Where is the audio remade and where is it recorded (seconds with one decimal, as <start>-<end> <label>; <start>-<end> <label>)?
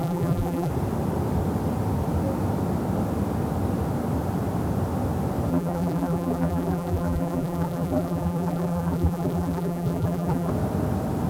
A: 0.0-0.7 remade; 0.7-5.5 recorded; 5.5-10.5 remade; 10.5-11.3 recorded